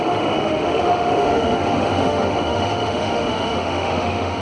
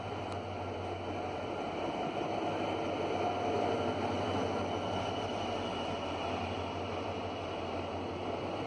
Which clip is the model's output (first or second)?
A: first